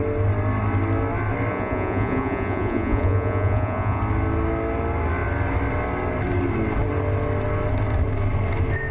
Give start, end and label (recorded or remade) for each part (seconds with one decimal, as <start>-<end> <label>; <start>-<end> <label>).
0.0-1.5 recorded; 1.5-4.0 remade; 4.0-8.9 recorded